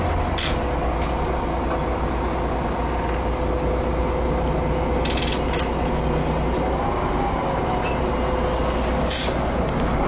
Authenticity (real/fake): real